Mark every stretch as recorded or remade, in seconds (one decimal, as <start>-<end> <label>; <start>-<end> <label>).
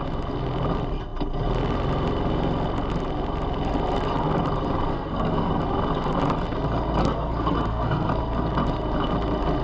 0.0-4.9 recorded; 4.9-5.6 remade; 5.6-7.0 recorded; 7.0-8.2 remade; 8.2-9.6 recorded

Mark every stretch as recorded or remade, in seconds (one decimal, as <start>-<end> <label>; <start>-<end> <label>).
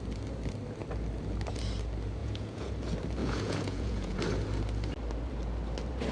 0.0-2.2 recorded; 2.2-2.7 remade; 2.7-3.2 recorded; 3.2-4.2 remade; 4.2-6.1 recorded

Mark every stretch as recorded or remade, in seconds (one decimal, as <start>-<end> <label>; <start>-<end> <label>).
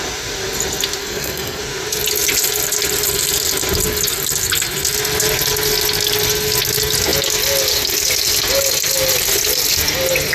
0.0-1.0 recorded; 1.0-1.6 remade; 1.6-10.3 recorded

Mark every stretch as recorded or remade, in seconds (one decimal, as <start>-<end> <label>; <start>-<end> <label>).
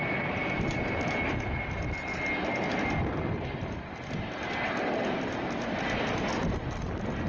0.0-7.3 recorded